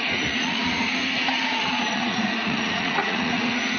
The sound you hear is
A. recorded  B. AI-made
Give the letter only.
B